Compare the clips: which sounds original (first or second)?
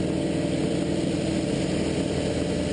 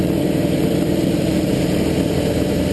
first